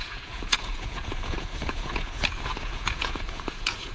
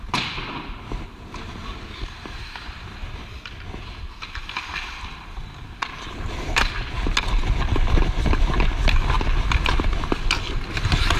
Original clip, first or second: second